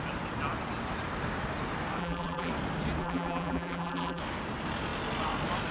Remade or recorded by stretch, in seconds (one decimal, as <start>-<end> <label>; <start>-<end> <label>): 0.0-2.0 recorded; 2.0-2.5 remade; 2.5-3.0 recorded; 3.0-4.2 remade; 4.2-5.7 recorded